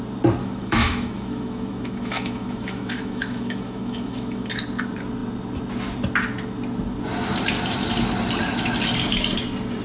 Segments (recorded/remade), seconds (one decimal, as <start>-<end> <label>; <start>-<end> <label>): 0.0-0.4 recorded; 0.4-4.5 remade; 4.5-9.8 recorded